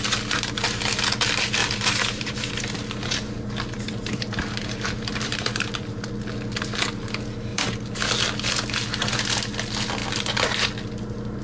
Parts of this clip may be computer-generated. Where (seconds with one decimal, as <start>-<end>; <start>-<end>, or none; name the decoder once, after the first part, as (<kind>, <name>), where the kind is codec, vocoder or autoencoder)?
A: 1.6-6.1 (vocoder, BigVGAN v2); 7.5-8.0